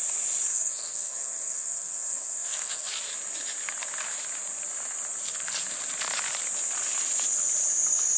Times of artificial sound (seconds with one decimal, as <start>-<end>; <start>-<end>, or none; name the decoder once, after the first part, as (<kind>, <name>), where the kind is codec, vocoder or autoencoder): 0.5-2.9 (codec, SNAC)